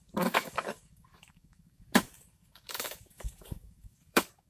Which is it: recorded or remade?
remade